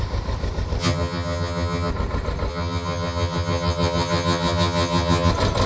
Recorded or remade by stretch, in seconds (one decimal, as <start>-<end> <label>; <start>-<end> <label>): 0.0-0.8 recorded; 0.8-1.9 remade; 1.9-2.5 recorded; 2.5-5.3 remade; 5.3-5.7 recorded